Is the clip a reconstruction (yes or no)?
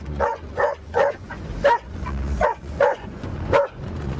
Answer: yes